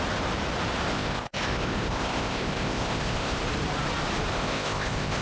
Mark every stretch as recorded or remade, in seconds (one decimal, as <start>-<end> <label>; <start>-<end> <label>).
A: 0.0-0.9 recorded; 0.9-3.4 remade; 3.4-4.3 recorded; 4.3-5.2 remade